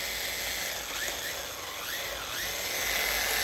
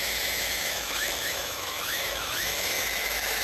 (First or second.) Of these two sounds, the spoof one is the second